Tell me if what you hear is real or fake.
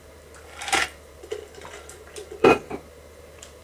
fake